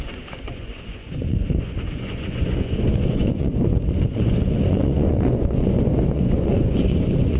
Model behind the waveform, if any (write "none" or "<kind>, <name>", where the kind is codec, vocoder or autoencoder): vocoder, Vocos